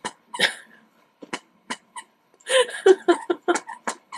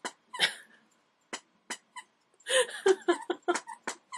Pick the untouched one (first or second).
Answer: second